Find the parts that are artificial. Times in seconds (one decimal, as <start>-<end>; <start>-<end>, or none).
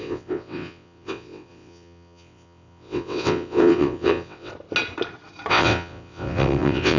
0.0-4.5; 5.5-7.0